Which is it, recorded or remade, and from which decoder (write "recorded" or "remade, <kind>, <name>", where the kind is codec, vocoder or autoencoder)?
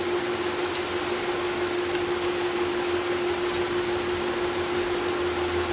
recorded